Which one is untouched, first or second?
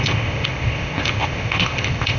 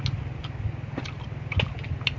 second